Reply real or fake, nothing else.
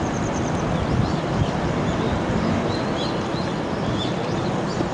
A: real